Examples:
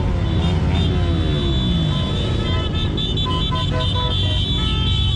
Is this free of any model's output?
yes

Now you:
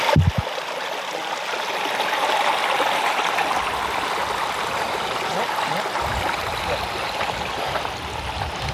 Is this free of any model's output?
yes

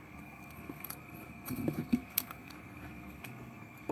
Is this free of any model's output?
no